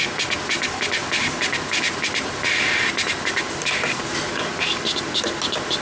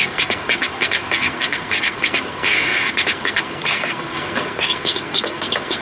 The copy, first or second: second